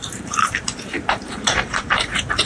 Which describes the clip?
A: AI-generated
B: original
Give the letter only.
A